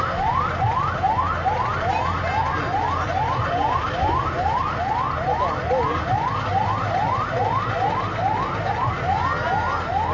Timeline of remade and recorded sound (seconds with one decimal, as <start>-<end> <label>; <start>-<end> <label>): 0.0-6.5 recorded; 6.5-7.4 remade; 7.4-10.1 recorded

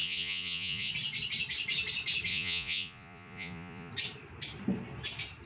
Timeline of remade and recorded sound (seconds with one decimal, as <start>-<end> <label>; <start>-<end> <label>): 0.0-0.9 remade; 0.9-2.3 recorded; 2.3-3.9 remade; 3.9-5.5 recorded